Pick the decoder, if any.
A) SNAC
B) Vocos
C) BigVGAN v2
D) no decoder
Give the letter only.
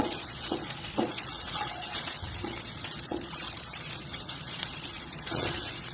B